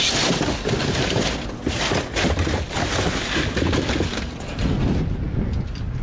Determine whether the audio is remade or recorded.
recorded